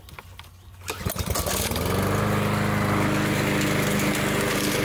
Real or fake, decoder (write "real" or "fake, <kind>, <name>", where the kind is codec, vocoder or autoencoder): real